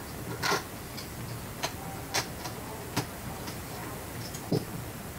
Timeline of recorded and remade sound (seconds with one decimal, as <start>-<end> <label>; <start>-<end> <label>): 0.0-3.1 recorded; 3.1-3.8 remade; 3.8-5.2 recorded